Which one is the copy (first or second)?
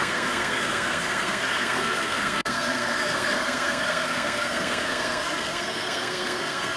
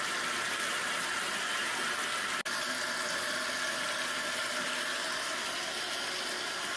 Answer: first